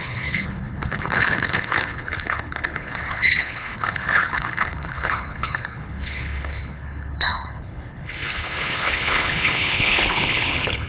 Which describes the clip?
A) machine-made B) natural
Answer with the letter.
A